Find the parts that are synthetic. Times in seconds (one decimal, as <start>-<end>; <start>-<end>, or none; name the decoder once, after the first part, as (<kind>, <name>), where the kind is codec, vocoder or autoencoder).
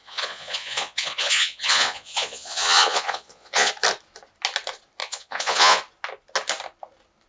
0.0-3.7 (vocoder, Vocos); 5.0-5.8